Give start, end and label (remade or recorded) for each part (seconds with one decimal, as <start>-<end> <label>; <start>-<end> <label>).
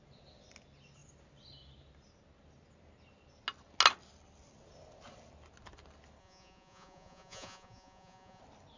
0.0-6.2 recorded; 6.2-8.4 remade; 8.4-8.8 recorded